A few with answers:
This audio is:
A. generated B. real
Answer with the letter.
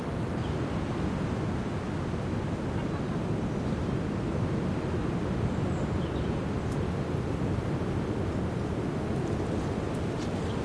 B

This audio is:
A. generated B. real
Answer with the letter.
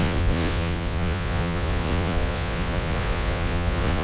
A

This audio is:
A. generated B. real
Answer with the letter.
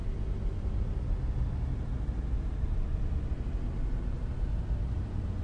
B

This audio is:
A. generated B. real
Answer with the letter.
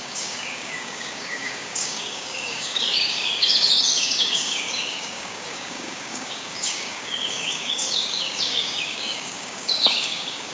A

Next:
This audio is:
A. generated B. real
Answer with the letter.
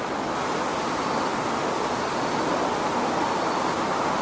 B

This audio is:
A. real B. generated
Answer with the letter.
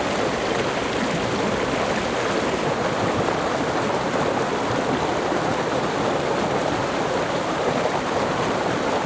A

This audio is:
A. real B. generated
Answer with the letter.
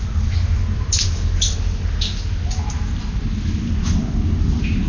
A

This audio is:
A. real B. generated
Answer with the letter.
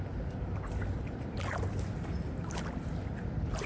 A